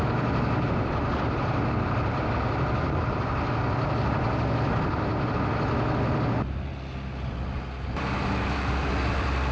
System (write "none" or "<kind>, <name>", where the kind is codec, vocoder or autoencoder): none